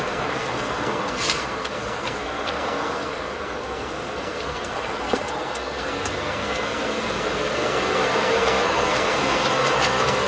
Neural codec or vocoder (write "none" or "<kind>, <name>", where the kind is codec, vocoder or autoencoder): codec, SNAC